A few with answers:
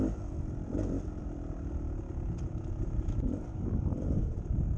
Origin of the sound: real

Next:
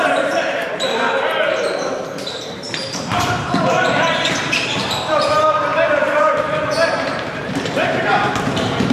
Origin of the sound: fake